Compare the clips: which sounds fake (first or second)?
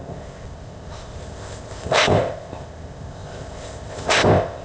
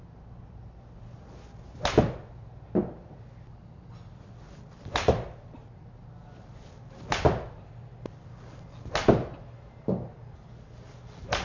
first